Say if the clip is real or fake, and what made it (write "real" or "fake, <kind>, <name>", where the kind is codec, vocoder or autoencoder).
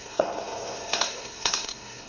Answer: fake, codec, SNAC